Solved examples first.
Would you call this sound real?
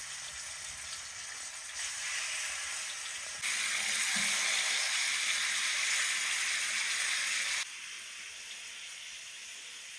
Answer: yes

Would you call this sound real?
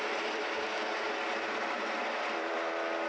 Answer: yes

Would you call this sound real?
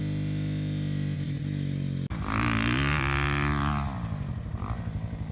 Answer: yes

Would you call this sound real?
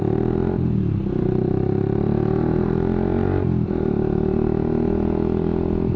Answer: yes